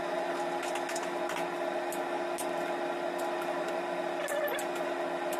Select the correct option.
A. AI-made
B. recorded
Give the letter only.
B